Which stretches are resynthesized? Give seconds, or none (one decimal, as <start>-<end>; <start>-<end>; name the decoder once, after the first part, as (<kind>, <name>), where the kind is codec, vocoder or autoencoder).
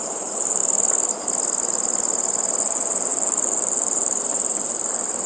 0.0-0.6 (vocoder, BigVGAN v2); 2.6-5.3